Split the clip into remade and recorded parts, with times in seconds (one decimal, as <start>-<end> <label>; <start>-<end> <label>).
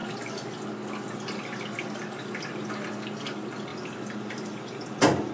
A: 0.0-3.7 recorded; 3.7-4.5 remade; 4.5-5.3 recorded